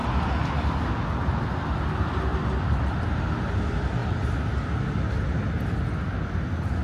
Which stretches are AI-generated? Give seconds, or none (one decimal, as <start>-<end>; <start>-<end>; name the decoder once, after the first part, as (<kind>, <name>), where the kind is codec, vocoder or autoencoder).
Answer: none

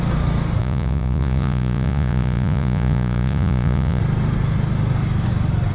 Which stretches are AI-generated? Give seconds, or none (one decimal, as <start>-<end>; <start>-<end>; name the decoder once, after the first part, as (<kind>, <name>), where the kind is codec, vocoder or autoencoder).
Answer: 0.6-4.0 (vocoder, Vocos)

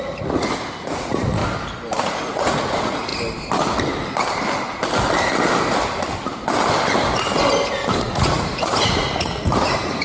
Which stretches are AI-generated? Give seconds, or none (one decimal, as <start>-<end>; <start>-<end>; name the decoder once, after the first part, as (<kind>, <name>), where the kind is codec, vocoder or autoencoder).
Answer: 0.0-1.4 (vocoder, Vocos); 2.0-3.1; 8.0-10.0

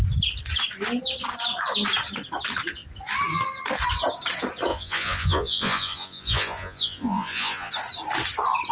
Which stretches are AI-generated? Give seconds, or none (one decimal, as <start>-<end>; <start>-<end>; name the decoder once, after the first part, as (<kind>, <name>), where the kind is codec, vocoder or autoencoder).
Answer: 4.7-7.7 (vocoder, Vocos)

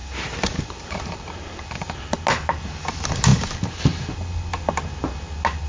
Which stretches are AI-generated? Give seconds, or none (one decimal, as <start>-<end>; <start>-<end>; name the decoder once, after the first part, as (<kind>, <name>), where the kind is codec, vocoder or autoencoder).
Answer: none

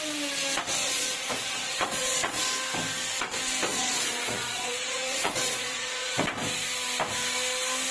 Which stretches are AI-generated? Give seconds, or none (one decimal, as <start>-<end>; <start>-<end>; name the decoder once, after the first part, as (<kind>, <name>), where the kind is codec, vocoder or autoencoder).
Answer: 0.8-2.4 (vocoder, Vocos); 3.7-6.2

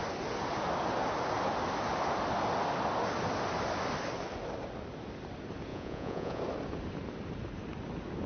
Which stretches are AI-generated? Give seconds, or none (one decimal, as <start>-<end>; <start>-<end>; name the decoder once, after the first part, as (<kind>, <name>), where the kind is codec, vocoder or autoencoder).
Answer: 5.7-6.4 (vocoder, Vocos)